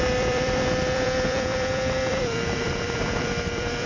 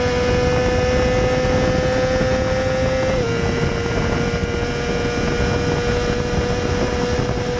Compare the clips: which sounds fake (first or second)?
first